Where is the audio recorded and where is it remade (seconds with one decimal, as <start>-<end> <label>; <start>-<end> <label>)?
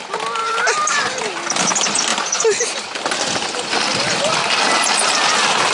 0.0-5.7 recorded